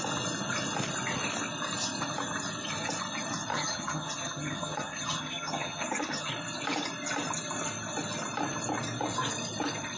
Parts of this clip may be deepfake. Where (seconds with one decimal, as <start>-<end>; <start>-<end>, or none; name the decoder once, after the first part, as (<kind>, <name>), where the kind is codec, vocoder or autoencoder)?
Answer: 3.5-6.3 (vocoder, HiFi-GAN)